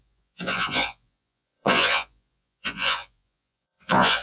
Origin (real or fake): fake